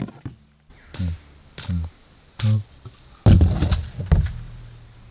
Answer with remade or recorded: recorded